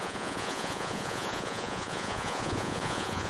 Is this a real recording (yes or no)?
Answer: no